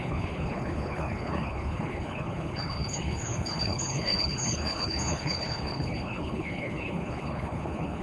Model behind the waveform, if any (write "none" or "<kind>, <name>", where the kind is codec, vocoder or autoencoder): codec, HILCodec